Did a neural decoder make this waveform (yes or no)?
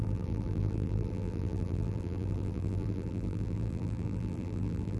yes